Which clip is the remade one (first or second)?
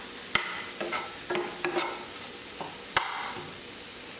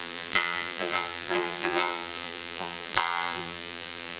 second